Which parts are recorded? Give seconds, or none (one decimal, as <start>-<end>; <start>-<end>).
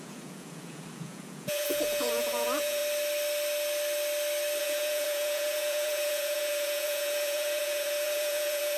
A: 2.8-4.6